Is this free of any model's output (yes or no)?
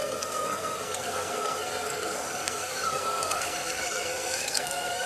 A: no